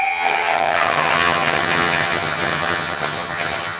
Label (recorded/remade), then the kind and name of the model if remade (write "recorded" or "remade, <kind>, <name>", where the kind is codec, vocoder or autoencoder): remade, vocoder, HiFi-GAN